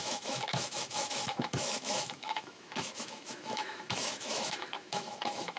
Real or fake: fake